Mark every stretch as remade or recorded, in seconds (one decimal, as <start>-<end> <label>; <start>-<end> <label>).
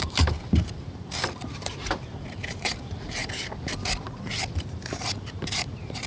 0.0-3.2 remade; 3.2-4.6 recorded; 4.6-6.1 remade